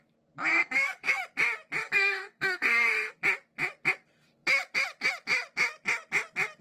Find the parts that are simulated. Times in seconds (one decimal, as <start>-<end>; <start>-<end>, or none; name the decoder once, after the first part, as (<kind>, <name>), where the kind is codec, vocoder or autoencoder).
0.5-1.2 (codec, SNAC); 1.8-3.2